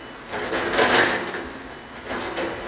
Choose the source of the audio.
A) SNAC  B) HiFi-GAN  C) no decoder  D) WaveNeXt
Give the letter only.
C